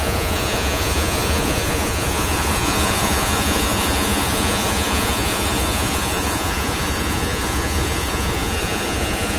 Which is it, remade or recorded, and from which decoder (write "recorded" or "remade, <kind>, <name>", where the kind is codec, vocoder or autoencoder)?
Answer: remade, vocoder, Vocos